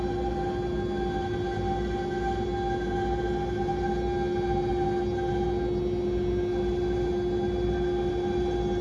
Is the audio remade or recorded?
recorded